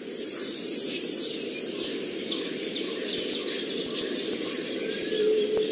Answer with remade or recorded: remade